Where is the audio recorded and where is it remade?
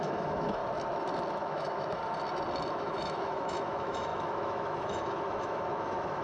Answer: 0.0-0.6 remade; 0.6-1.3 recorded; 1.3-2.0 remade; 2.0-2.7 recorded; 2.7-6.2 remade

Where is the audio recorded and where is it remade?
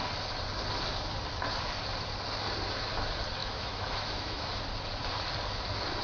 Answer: 0.0-3.4 recorded; 3.4-4.5 remade; 4.5-6.0 recorded